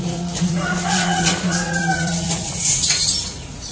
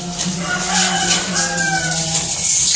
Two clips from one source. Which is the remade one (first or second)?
first